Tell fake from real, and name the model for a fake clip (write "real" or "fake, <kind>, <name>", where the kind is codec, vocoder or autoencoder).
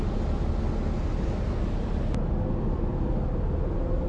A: real